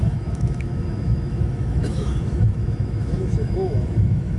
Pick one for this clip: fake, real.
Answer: fake